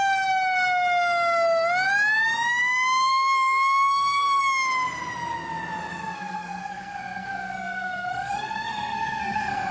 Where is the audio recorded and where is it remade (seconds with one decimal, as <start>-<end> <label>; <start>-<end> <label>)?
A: 0.0-3.1 recorded; 3.1-4.4 remade; 4.4-5.9 recorded; 5.9-9.7 remade